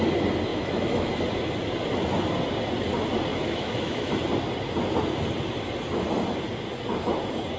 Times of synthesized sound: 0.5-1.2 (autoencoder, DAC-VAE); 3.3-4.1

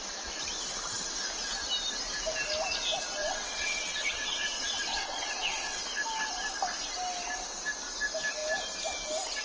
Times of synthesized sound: 3.2-5.8 (vocoder, WaveNeXt)

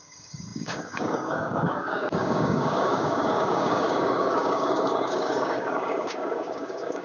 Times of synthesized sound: 0.0-7.0 (codec, DAC)

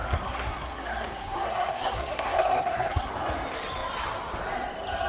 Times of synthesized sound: 0.0-3.1 (codec, SNAC)